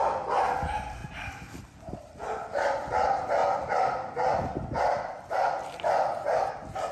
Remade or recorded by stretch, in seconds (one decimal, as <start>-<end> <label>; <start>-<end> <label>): 0.0-6.9 recorded